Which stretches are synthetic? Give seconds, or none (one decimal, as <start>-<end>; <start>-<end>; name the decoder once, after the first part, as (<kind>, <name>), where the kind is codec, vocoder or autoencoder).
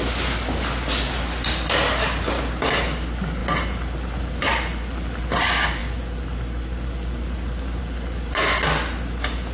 none